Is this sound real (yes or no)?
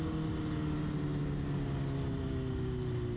yes